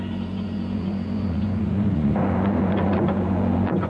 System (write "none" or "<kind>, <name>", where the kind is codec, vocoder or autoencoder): vocoder, Vocos